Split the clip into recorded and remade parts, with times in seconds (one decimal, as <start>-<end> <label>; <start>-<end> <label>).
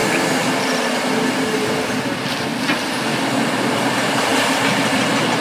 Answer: 0.0-2.5 remade; 2.5-3.5 recorded; 3.5-4.3 remade; 4.3-5.4 recorded